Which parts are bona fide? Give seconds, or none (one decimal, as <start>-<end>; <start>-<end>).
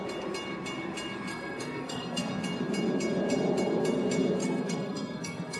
0.0-1.3; 2.3-4.4